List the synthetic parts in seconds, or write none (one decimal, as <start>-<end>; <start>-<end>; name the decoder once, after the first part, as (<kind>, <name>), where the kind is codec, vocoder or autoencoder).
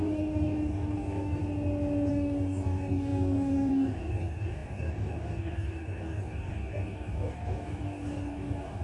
0.0-1.4 (codec, DAC); 2.1-8.8